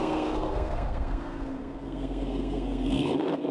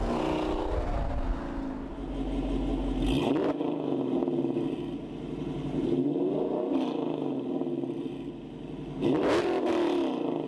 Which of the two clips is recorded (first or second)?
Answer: second